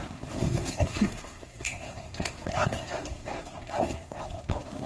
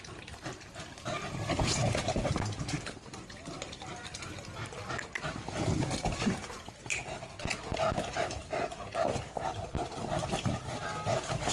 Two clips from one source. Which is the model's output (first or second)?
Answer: first